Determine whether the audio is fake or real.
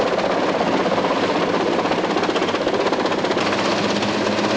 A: real